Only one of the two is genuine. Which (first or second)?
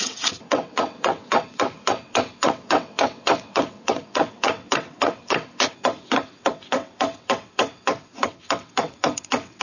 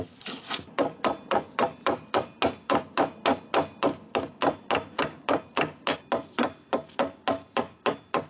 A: second